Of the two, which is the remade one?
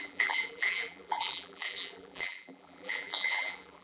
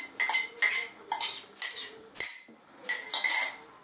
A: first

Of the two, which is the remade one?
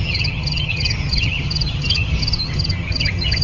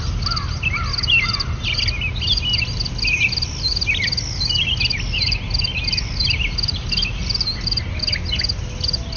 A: first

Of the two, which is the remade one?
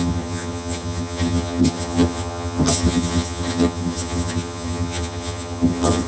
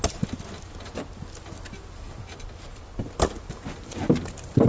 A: first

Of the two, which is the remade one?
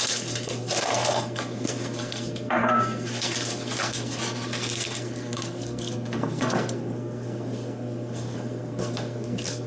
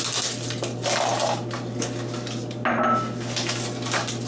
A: first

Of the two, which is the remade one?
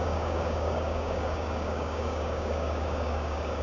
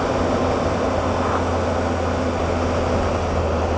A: first